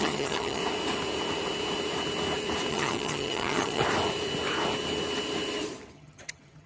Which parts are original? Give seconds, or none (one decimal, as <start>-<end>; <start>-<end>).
0.6-2.7; 3.8-5.9